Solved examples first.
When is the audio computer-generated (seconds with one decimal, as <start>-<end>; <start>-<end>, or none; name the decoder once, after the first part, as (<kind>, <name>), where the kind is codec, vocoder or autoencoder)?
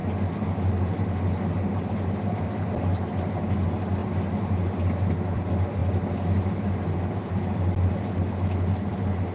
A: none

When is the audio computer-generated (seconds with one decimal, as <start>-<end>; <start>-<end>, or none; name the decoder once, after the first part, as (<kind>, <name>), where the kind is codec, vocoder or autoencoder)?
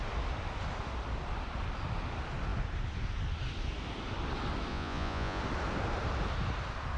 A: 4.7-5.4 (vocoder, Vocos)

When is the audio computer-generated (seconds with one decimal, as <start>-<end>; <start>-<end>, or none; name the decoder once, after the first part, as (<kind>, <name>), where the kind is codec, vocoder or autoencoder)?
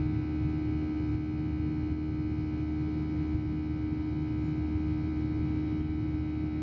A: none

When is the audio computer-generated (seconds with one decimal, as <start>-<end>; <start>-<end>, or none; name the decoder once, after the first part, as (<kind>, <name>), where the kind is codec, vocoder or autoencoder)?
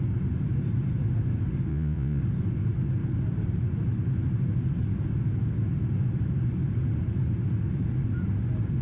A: 1.7-2.2 (vocoder, Vocos)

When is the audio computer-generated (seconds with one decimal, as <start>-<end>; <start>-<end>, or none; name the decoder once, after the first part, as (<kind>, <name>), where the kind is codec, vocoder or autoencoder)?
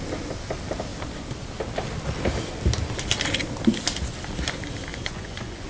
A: 4.9-5.7 (vocoder, Vocos)